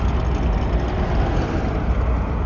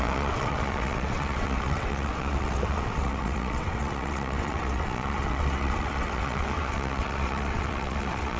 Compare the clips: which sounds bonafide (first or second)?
first